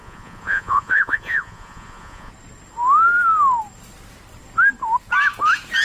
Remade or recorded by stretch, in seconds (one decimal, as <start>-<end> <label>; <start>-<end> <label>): 0.0-2.3 remade; 2.3-5.8 recorded